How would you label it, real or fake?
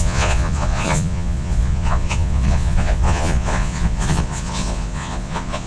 fake